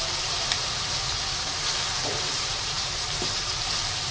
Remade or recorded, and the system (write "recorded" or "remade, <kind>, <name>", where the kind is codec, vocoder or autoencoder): remade, vocoder, BigVGAN v2